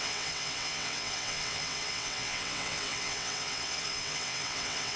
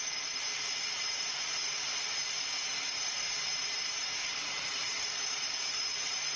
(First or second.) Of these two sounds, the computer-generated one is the first